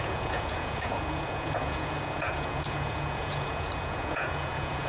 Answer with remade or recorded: remade